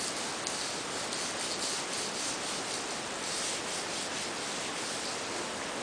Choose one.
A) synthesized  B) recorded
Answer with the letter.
B